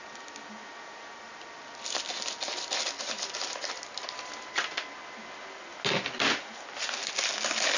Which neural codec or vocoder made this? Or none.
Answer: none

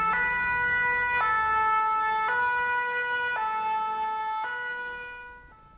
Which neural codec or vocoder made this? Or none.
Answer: none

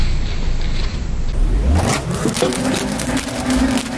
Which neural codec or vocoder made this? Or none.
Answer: none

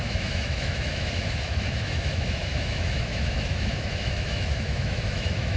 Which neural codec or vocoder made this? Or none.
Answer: autoencoder, DAC-VAE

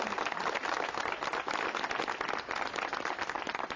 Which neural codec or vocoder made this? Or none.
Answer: none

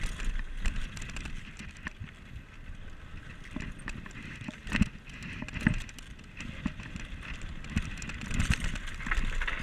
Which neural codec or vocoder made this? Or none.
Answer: none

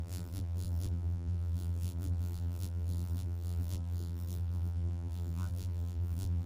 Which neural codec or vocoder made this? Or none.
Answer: vocoder, BigVGAN v2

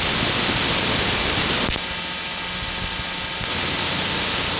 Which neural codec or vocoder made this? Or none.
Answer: none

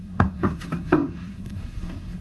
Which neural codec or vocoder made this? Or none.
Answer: codec, SNAC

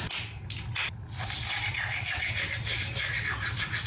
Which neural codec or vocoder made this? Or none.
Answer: none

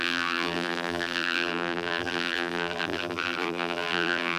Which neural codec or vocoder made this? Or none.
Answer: vocoder, BigVGAN v2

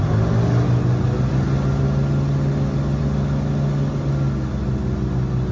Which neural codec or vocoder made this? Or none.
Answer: none